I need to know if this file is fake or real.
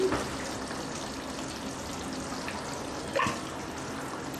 real